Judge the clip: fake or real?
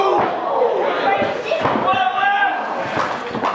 real